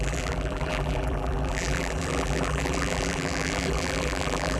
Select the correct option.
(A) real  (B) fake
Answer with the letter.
B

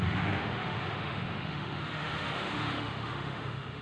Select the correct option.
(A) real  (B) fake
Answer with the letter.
B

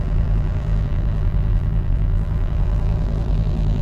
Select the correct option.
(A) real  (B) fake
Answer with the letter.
B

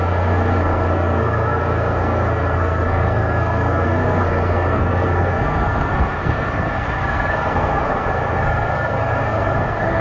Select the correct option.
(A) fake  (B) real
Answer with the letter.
A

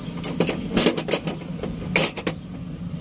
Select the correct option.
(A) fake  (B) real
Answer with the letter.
B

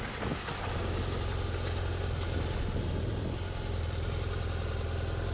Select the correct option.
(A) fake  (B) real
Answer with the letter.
B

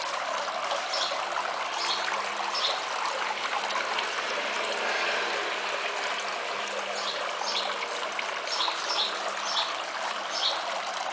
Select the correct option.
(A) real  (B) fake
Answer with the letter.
A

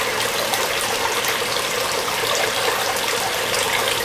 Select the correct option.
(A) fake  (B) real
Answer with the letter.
A